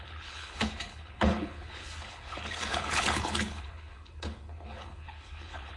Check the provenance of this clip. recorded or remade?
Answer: remade